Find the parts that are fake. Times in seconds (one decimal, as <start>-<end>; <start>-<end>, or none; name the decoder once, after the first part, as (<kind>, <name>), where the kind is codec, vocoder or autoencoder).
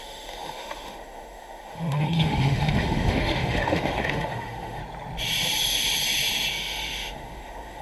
0.0-4.8 (autoencoder, DAC-VAE); 6.5-7.8